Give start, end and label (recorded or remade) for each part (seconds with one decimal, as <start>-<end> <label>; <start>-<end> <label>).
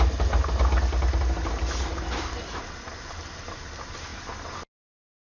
0.0-5.3 recorded